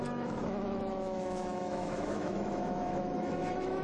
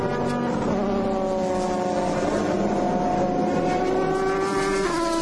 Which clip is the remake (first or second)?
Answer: first